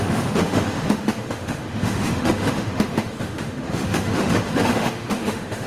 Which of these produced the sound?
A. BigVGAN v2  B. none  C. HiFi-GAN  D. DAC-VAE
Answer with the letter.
D